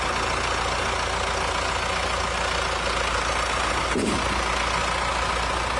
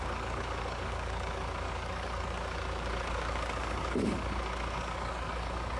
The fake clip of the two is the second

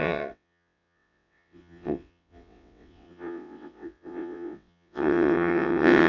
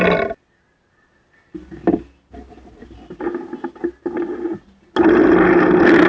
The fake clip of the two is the first